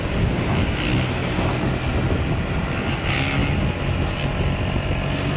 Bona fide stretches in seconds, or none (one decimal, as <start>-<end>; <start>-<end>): 0.0-5.4